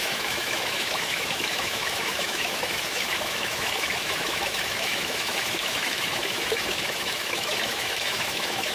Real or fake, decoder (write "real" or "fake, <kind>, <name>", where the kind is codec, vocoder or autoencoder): fake, autoencoder, DAC-VAE